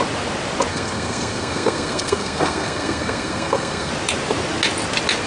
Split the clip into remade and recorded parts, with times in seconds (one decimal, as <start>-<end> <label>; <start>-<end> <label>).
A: 0.0-0.7 recorded; 0.7-3.9 remade; 3.9-5.3 recorded